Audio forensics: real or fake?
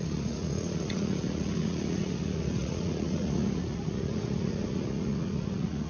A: fake